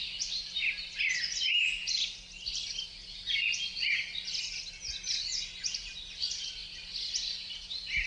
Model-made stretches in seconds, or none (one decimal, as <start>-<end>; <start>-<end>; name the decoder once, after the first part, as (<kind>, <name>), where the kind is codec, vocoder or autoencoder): none